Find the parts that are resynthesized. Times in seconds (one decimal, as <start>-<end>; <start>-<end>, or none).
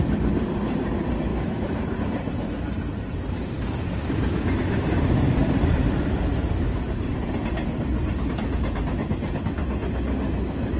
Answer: 1.3-6.0